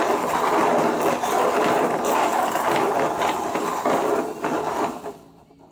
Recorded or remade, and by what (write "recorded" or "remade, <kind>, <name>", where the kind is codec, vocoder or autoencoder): recorded